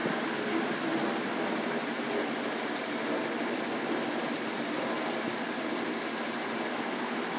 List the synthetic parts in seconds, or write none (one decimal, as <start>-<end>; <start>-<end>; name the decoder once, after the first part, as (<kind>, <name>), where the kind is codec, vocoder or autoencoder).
6.7-7.4 (autoencoder, DAC-VAE)